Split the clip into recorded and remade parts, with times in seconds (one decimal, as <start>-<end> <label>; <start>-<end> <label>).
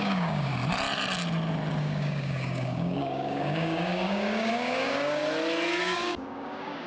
0.0-0.5 remade; 0.5-1.8 recorded; 1.8-5.2 remade; 5.2-5.8 recorded; 5.8-6.9 remade